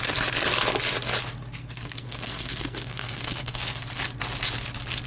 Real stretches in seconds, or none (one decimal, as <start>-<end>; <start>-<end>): 0.0-1.6; 3.8-5.1